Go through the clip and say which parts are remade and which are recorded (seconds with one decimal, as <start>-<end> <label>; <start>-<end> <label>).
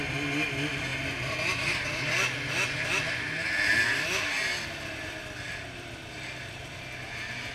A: 0.0-7.5 recorded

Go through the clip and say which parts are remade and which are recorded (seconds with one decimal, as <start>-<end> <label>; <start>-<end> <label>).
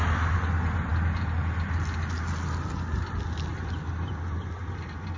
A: 0.0-5.2 recorded